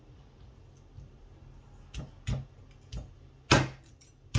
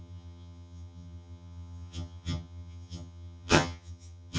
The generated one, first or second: second